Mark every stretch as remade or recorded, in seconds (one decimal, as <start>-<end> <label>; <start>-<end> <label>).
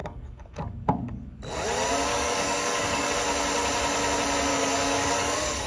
0.0-1.4 remade; 1.4-2.1 recorded; 2.1-3.1 remade; 3.1-4.5 recorded; 4.5-5.7 remade